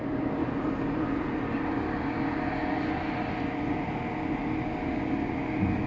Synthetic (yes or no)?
no